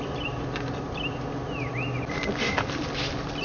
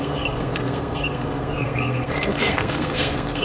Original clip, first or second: first